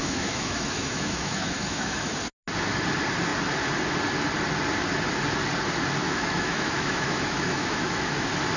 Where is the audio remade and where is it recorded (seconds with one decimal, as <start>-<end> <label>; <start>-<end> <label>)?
0.0-2.1 remade; 2.1-6.0 recorded; 6.0-8.2 remade; 8.2-8.6 recorded